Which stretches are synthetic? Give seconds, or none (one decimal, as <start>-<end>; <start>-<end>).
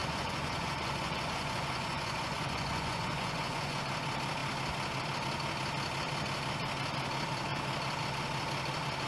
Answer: 0.0-3.8